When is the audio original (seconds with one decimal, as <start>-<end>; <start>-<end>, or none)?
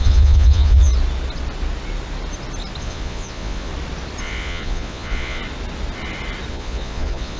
0.9-2.8; 3.7-4.2; 5.4-6.5